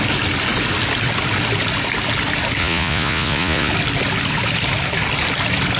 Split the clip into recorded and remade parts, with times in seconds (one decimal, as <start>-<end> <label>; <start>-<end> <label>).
0.0-2.6 recorded; 2.6-3.7 remade; 3.7-5.8 recorded